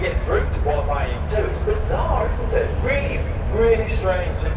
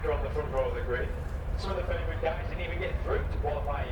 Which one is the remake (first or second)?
second